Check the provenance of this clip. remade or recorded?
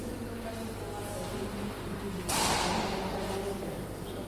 recorded